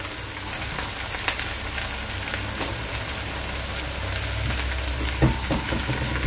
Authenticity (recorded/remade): recorded